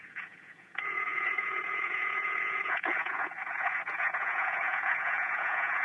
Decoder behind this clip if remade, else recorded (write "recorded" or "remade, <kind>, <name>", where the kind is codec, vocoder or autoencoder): remade, vocoder, Vocos